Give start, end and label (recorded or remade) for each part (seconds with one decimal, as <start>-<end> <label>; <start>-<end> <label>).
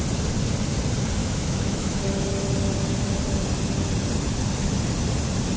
0.0-1.2 recorded; 1.2-2.0 remade; 2.0-5.6 recorded